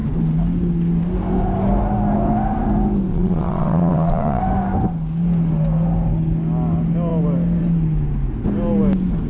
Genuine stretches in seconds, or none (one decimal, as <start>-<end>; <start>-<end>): 0.0-3.1; 4.4-9.3